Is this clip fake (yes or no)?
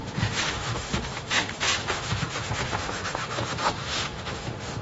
yes